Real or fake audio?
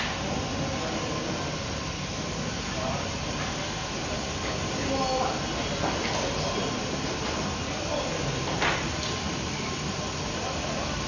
real